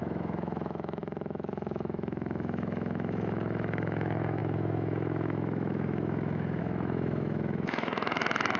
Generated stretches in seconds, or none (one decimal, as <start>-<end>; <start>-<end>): 0.0-8.6